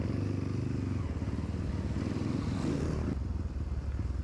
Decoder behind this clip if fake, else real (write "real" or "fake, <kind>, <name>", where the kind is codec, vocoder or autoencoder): real